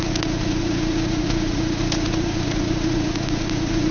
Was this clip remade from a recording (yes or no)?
yes